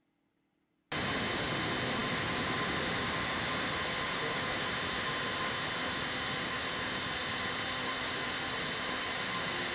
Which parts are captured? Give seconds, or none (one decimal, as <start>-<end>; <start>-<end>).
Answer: 0.0-2.0; 3.4-7.2